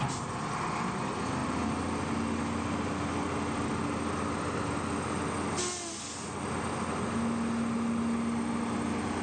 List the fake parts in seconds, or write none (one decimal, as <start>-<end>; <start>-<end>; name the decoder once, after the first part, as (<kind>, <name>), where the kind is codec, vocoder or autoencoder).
none